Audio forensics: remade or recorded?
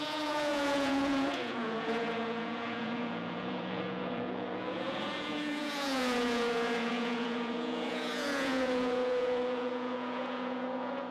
remade